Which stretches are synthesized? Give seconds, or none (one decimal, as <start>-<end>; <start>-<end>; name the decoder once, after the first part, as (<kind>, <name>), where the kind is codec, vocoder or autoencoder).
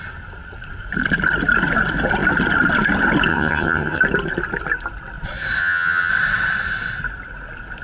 3.3-4.0 (vocoder, HiFi-GAN); 5.6-6.1